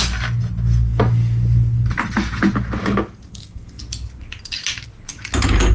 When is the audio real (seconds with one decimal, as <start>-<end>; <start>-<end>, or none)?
0.0-3.3; 3.8-5.7